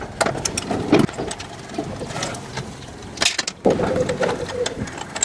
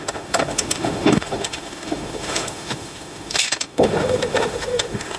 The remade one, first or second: second